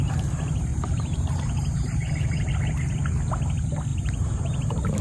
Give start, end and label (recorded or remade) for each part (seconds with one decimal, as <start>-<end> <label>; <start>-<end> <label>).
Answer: 0.0-0.7 recorded; 0.7-2.5 remade; 2.5-3.9 recorded; 3.9-5.0 remade